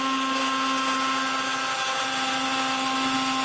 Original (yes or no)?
yes